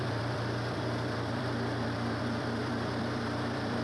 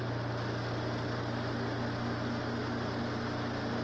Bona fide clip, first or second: second